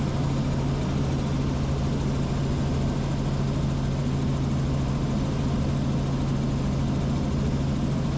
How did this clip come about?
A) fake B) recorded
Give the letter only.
B